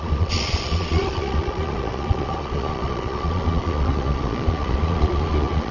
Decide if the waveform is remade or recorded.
remade